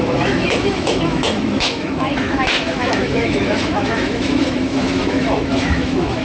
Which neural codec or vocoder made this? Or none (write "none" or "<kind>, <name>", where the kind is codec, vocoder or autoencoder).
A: autoencoder, DAC-VAE